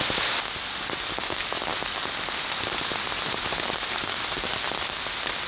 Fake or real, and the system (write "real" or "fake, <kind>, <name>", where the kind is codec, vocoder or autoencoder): real